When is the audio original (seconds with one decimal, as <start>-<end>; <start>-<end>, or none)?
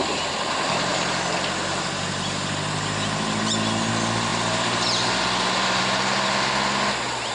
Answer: 0.0-4.3; 5.8-7.3